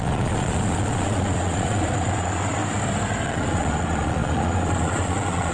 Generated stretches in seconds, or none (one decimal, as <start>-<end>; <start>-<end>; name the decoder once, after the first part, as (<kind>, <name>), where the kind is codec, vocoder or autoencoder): 0.0-2.6 (vocoder, Vocos); 3.2-5.5